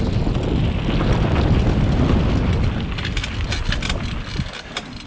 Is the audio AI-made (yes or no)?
no